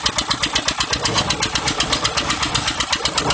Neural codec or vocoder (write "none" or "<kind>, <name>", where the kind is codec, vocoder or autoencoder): none